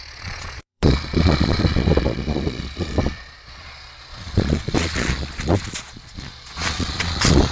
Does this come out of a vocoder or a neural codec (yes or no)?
yes